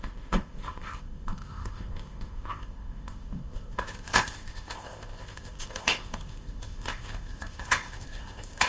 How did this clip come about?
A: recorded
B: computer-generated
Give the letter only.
B